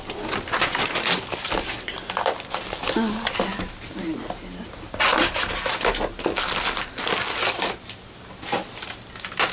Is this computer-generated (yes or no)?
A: no